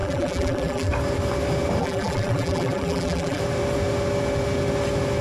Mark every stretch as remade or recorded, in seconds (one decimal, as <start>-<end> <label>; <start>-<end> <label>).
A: 0.0-0.9 remade; 0.9-1.8 recorded; 1.8-3.4 remade; 3.4-5.2 recorded